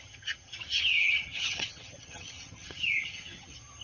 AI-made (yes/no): yes